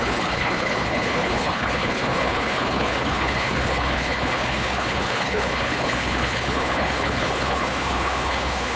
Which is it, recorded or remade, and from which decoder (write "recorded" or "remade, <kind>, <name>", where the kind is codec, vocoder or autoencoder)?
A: remade, codec, HILCodec